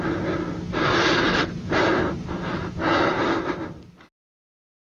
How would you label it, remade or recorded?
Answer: recorded